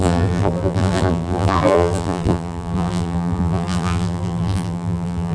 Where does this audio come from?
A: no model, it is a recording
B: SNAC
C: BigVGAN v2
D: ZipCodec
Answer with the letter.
C